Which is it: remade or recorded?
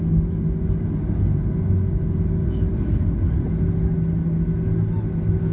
recorded